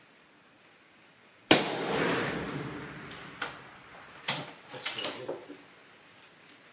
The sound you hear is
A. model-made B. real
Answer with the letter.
B